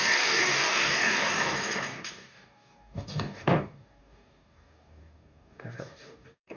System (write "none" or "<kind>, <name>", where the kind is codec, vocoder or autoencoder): codec, DAC